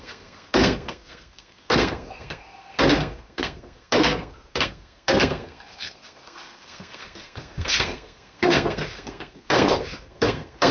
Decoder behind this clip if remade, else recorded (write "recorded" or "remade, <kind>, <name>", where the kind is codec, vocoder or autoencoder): remade, codec, SNAC